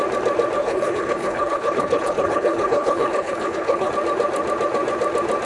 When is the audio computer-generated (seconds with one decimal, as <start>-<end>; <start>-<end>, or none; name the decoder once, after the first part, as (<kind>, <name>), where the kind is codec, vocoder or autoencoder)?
0.6-3.9 (codec, HILCodec)